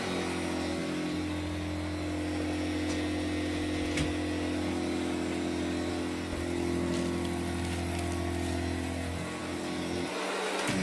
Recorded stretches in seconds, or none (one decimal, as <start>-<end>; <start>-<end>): 0.0-10.8